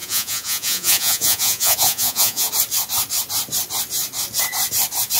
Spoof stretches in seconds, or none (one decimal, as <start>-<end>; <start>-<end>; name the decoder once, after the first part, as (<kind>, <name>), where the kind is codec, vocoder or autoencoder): 0.0-2.5 (vocoder, Vocos)